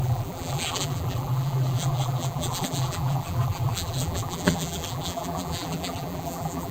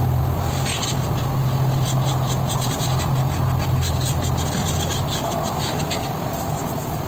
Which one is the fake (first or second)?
first